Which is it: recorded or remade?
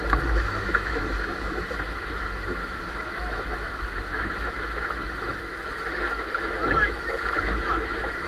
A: remade